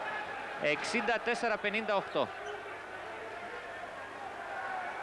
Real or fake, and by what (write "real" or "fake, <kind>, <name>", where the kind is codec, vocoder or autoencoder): real